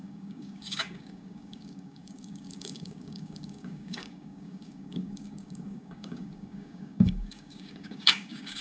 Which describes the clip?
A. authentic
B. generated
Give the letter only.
B